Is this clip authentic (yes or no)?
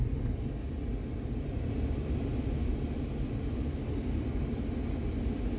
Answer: yes